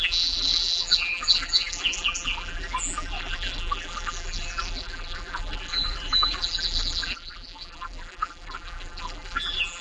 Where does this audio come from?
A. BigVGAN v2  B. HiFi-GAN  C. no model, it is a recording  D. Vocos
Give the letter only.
A